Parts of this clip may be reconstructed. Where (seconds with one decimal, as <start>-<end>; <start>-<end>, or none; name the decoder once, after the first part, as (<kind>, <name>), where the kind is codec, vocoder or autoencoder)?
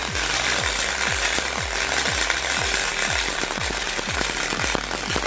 none